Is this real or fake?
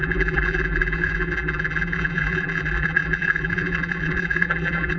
fake